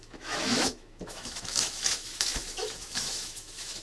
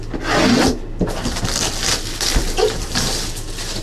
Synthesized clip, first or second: first